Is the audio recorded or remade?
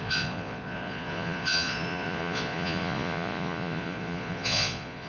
remade